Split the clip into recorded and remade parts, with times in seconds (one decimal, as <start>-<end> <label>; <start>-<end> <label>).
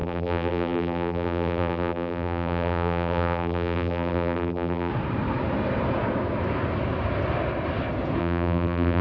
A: 0.0-4.9 remade; 4.9-8.2 recorded; 8.2-9.0 remade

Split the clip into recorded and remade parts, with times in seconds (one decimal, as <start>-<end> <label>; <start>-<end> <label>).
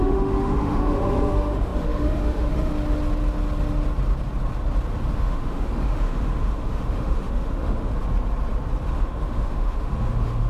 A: 0.0-2.7 remade; 2.7-5.2 recorded; 5.2-7.9 remade; 7.9-8.9 recorded; 8.9-10.5 remade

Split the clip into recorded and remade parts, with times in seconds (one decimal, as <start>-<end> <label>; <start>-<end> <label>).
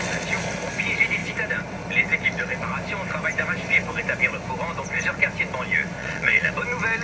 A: 0.0-6.0 recorded; 6.0-6.5 remade; 6.5-7.0 recorded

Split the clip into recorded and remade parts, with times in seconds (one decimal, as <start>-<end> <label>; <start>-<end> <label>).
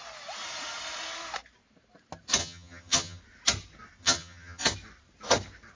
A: 0.0-2.4 recorded; 2.4-3.2 remade; 3.2-4.0 recorded; 4.0-4.6 remade; 4.6-5.8 recorded